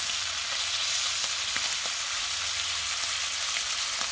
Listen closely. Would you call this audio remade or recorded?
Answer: recorded